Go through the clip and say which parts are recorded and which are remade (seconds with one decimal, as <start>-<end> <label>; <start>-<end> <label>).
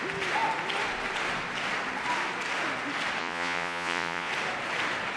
0.0-3.2 recorded; 3.2-4.3 remade; 4.3-5.2 recorded